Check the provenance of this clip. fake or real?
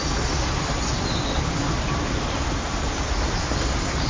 real